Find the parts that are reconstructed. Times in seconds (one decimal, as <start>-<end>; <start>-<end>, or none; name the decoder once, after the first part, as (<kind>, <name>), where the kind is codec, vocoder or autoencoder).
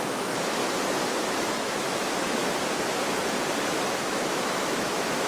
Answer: 0.0-0.6 (autoencoder, DAC-VAE); 1.3-2.4; 3.9-5.3